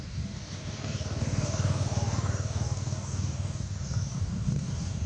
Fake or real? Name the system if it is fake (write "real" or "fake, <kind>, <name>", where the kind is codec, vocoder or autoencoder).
fake, codec, DAC